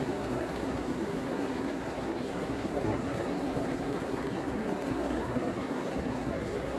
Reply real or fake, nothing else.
fake